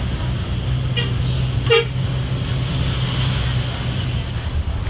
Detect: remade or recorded recorded